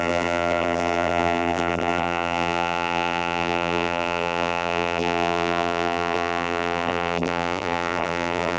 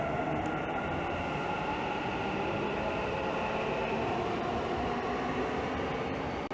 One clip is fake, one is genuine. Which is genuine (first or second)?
second